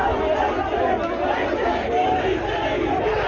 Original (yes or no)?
yes